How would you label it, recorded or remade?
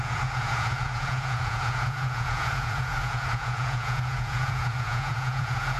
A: remade